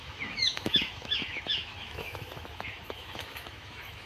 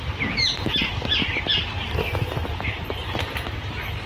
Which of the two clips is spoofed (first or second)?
first